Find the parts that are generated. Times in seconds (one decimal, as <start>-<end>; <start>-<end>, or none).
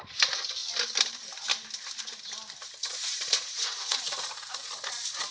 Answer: 2.8-4.7